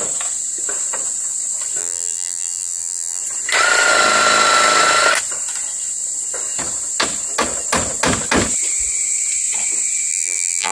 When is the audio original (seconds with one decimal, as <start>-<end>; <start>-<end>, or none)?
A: 0.0-1.8; 3.2-10.1